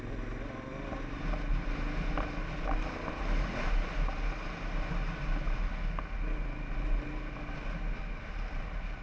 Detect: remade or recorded recorded